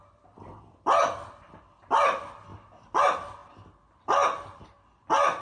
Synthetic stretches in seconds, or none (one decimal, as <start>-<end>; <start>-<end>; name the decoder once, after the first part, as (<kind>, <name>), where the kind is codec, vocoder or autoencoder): none